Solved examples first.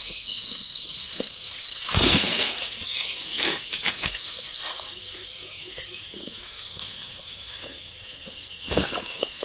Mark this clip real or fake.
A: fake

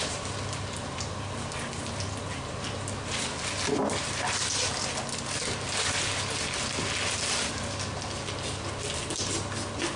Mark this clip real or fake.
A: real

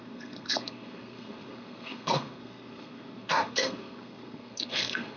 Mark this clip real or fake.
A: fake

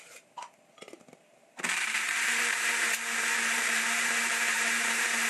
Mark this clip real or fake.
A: fake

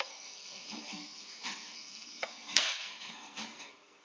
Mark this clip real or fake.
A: fake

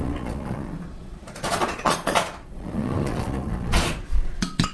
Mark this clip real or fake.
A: fake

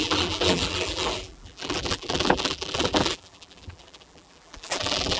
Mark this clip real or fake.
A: fake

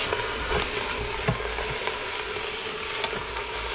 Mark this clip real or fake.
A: real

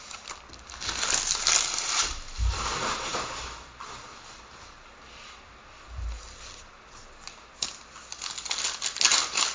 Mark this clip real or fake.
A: real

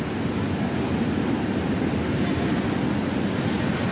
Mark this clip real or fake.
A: real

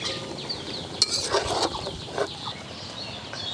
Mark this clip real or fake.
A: real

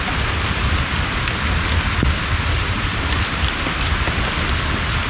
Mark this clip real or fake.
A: real